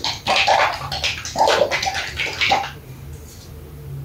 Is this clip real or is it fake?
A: real